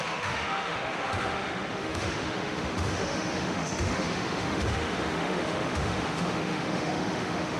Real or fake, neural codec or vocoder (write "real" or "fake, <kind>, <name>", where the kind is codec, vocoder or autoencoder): fake, autoencoder, DAC-VAE